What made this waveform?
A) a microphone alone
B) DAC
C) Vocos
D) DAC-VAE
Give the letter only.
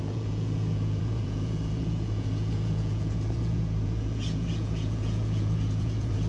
C